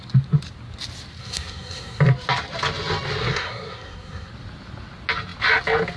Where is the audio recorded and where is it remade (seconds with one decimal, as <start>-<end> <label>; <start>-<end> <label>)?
0.0-1.2 recorded; 1.2-2.0 remade; 2.0-3.2 recorded; 3.2-4.3 remade; 4.3-6.0 recorded